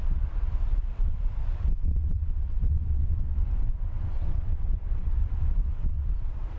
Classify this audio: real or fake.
fake